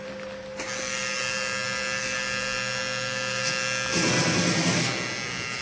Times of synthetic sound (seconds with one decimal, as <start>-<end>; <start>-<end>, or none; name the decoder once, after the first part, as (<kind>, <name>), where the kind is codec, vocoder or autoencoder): 4.2-4.8 (vocoder, BigVGAN v2)